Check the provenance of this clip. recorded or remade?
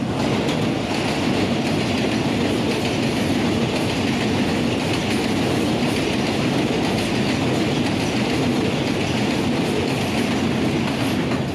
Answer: recorded